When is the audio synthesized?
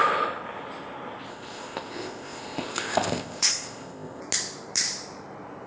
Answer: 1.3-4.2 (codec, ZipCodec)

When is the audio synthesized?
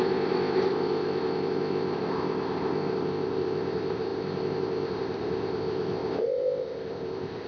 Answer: 0.0-7.5 (codec, ZipCodec)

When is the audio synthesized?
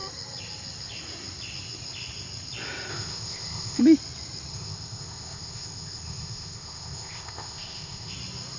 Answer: 2.9-3.8 (codec, ZipCodec); 4.5-8.1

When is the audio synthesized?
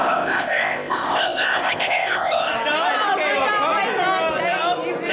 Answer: 0.0-2.5 (codec, ZipCodec)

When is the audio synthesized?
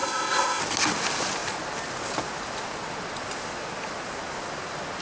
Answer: 0.0-0.6 (codec, ZipCodec)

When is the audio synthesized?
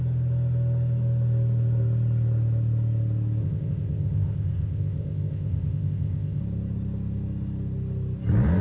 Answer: 3.4-6.4 (codec, ZipCodec)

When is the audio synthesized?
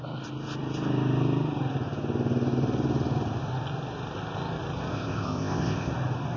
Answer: 4.9-5.9 (codec, ZipCodec)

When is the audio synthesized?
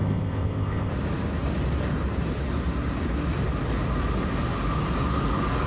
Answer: 0.0-0.9 (codec, ZipCodec)